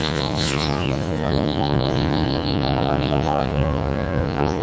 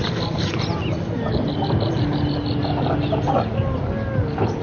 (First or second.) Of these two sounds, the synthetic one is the first